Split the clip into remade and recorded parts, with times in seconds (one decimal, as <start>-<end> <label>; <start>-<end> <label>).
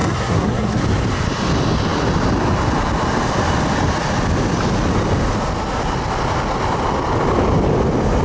0.0-0.8 remade; 0.8-8.2 recorded